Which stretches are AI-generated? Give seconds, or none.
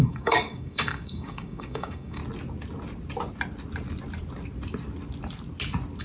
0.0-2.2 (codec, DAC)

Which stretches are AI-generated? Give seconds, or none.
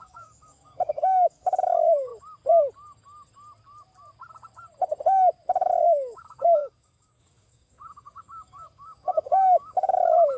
0.0-2.1 (codec, DAC); 5.8-10.4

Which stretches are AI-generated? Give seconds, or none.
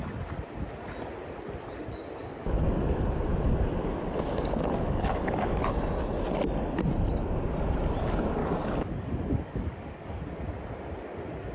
2.2-2.7 (codec, DAC); 4.3-5.6; 8.4-10.4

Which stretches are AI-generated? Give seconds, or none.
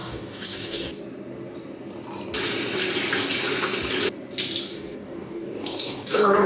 0.0-1.0 (codec, DAC); 4.7-6.5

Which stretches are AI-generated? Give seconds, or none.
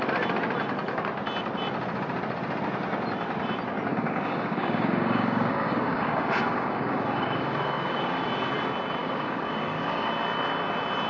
3.9-8.2 (codec, DAC); 9.0-10.1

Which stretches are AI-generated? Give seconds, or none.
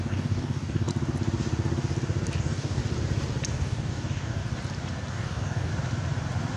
0.0-0.9 (codec, DAC); 2.4-2.8; 3.5-4.4; 5.1-5.7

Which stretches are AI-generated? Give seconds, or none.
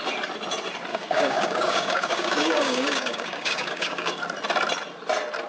0.9-4.2 (codec, DAC)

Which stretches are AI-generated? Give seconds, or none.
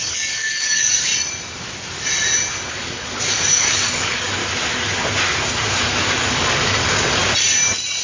0.0-1.1 (codec, DAC); 2.7-4.4; 5.8-7.2